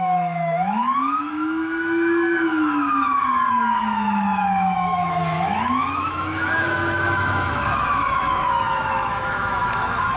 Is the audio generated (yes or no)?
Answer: yes